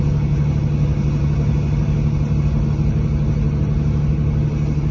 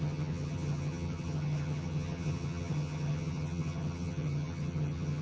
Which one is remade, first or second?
second